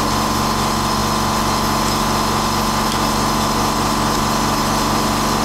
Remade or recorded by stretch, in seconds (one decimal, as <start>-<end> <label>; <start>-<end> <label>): 0.0-5.4 recorded